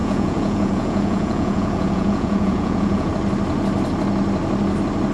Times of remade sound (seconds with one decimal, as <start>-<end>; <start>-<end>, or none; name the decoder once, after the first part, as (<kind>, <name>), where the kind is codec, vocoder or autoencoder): 0.0-3.1 (vocoder, Vocos)